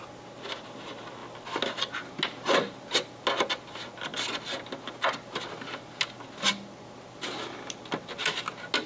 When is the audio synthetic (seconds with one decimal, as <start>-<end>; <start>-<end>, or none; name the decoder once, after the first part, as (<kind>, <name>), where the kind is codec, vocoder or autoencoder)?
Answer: none